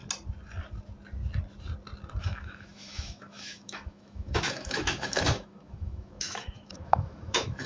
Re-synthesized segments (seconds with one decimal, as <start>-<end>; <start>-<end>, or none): 2.2-7.7